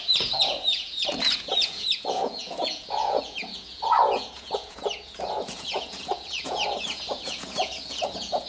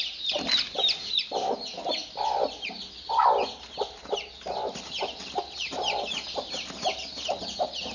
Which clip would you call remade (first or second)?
first